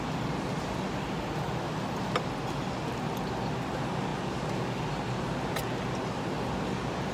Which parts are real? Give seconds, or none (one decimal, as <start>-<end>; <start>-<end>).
0.0-7.1